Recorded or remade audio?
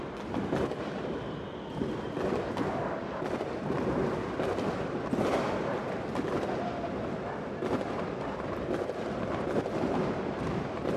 recorded